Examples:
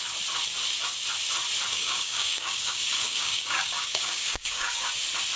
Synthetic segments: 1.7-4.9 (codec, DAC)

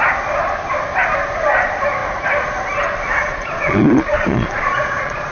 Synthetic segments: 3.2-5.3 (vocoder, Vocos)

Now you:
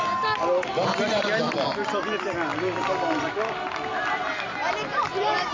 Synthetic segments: none

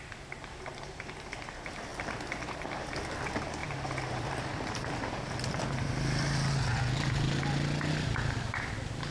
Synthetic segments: none

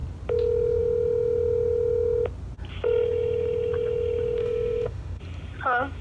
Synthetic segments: 4.4-5.2 (autoencoder, DAC-VAE)

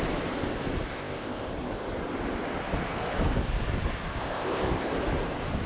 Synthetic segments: 0.9-1.5 (codec, ZipCodec); 4.2-4.9

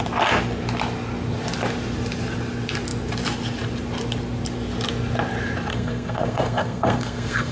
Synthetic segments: 5.7-7.5 (codec, SNAC)

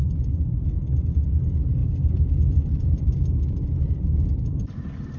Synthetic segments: 1.8-5.2 (vocoder, BigVGAN v2)